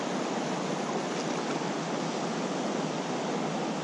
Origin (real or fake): real